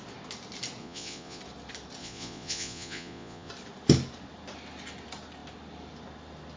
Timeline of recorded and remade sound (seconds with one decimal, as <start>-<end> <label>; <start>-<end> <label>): 0.0-0.8 recorded; 0.8-1.4 remade; 1.4-2.0 recorded; 2.0-3.5 remade; 3.5-6.6 recorded